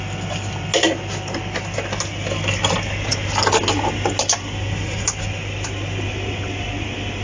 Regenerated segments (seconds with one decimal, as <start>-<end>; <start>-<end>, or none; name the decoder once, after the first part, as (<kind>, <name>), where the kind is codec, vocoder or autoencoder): none